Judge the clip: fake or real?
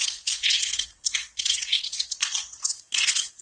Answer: fake